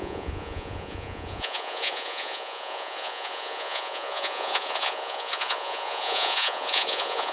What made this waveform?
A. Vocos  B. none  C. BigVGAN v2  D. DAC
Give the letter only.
A